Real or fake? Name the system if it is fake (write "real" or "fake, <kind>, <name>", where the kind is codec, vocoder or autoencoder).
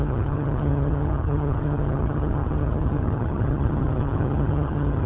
fake, vocoder, HiFi-GAN